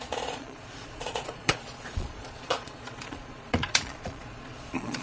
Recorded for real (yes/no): no